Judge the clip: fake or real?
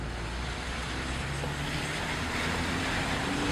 real